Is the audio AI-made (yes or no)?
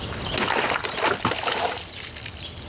no